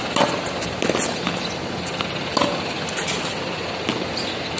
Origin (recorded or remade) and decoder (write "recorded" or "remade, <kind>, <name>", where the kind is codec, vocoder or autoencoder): recorded